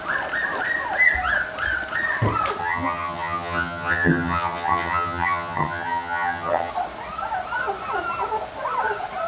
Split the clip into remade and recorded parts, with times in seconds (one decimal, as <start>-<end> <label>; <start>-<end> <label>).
0.0-2.6 recorded; 2.6-6.7 remade; 6.7-9.3 recorded